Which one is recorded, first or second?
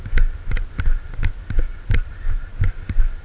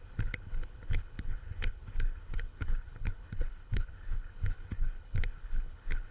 first